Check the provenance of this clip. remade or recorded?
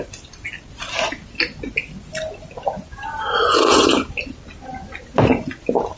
recorded